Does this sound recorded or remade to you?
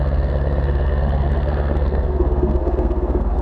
remade